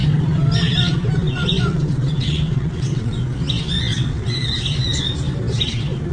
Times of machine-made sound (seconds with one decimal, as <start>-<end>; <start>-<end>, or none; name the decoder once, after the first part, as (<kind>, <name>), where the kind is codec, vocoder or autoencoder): 1.7-3.2 (vocoder, WaveNeXt); 3.9-4.5